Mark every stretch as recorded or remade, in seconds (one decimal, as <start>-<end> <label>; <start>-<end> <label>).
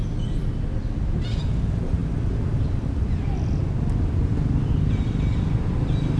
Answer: 0.0-6.2 recorded